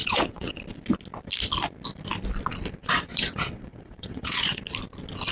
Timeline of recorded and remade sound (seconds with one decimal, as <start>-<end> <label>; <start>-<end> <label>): 0.0-0.6 remade; 0.6-2.8 recorded; 2.8-4.6 remade; 4.6-5.3 recorded

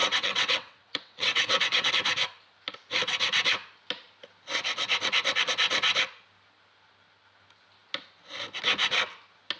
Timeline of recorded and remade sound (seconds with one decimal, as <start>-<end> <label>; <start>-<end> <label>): 0.0-1.9 remade; 1.9-9.6 recorded

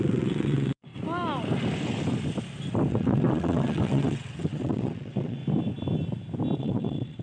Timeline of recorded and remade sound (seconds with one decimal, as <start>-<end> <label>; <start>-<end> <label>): 0.0-0.9 remade; 0.9-2.9 recorded; 2.9-5.4 remade; 5.4-6.6 recorded; 6.6-7.2 remade

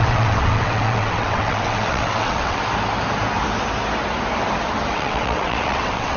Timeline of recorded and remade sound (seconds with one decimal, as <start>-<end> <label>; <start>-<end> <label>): 0.0-2.6 remade; 2.6-4.9 recorded; 4.9-6.2 remade

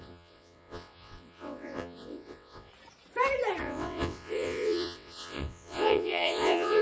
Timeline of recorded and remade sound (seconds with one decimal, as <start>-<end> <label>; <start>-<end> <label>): 0.0-2.7 remade; 2.7-3.6 recorded; 3.6-6.8 remade

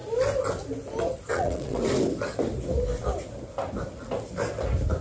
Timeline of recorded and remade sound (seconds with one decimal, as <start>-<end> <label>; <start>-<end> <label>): 0.0-1.3 recorded; 1.3-1.8 remade; 1.8-5.0 recorded